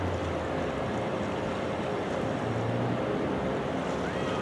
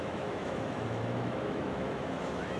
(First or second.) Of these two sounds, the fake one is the second